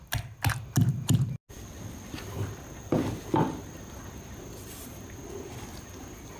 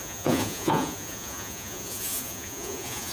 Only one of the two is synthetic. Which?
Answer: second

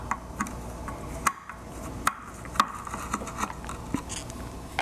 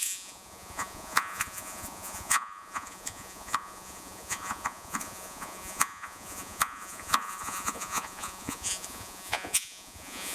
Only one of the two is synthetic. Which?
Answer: second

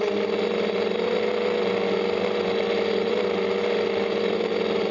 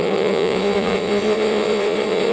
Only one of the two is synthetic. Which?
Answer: second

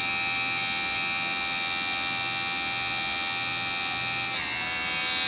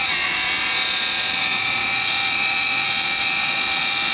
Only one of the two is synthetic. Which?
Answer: second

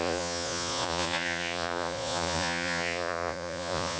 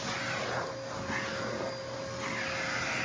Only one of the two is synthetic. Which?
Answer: first